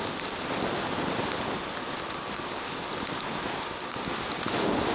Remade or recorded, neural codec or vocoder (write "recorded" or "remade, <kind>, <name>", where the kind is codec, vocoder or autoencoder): recorded